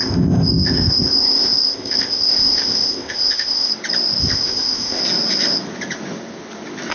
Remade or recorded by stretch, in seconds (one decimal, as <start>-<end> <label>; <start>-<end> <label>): 0.0-3.7 remade; 3.7-4.2 recorded; 4.2-5.0 remade; 5.0-6.9 recorded